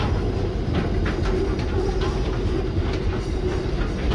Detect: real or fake real